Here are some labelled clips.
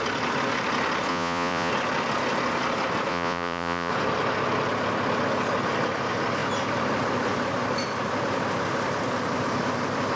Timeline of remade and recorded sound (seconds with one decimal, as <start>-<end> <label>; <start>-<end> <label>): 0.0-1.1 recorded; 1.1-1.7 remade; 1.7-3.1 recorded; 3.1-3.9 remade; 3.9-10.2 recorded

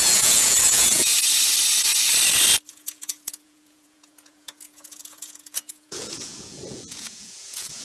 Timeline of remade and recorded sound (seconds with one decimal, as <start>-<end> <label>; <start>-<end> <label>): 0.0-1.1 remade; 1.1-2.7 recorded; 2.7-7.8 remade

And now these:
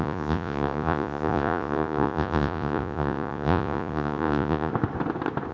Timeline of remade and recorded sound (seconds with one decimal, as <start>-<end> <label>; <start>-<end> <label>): 0.0-4.7 remade; 4.7-5.5 recorded

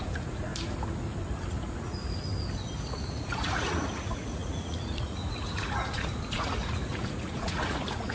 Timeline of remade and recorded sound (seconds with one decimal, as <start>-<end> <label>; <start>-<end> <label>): 0.0-0.5 remade; 0.5-1.5 recorded; 1.5-2.0 remade; 2.0-2.8 recorded; 2.8-8.1 remade

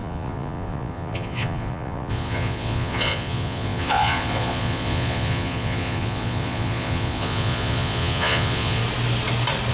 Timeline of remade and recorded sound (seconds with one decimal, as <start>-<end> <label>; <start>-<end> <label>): 0.0-8.8 remade; 8.8-9.7 recorded

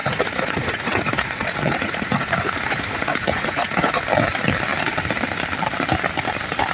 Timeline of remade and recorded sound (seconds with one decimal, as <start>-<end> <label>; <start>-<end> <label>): 0.0-4.0 remade; 4.0-6.7 recorded

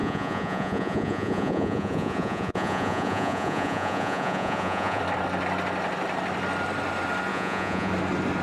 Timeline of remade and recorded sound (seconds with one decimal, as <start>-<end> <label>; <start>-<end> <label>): 0.0-5.0 remade; 5.0-7.3 recorded; 7.3-7.9 remade; 7.9-8.4 recorded

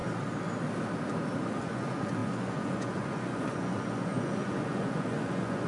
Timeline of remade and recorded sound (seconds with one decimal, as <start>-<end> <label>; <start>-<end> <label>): 0.0-1.6 recorded; 1.6-5.7 remade